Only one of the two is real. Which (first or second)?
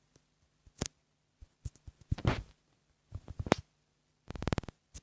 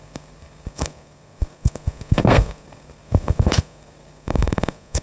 first